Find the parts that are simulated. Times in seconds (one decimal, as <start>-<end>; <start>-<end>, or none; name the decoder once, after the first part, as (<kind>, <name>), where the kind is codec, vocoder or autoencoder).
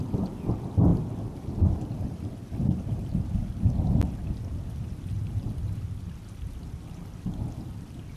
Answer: none